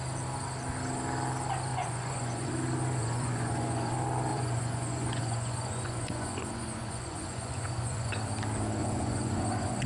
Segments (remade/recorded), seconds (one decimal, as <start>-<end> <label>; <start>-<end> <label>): 0.0-1.7 recorded; 1.7-2.5 remade; 2.5-3.0 recorded; 3.0-3.9 remade; 3.9-4.3 recorded; 4.3-8.1 remade; 8.1-8.8 recorded; 8.8-9.9 remade